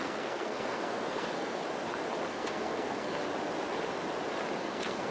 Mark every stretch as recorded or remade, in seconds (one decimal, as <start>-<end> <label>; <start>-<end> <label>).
0.0-1.6 remade; 1.6-2.3 recorded; 2.3-3.2 remade; 3.2-4.6 recorded; 4.6-5.1 remade